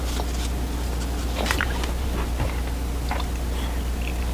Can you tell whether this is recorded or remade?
recorded